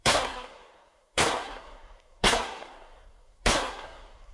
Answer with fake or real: fake